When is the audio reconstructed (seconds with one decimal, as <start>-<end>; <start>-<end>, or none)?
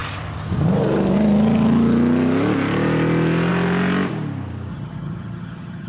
4.7-5.9